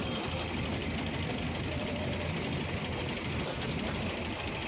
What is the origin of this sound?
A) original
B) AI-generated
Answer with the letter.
A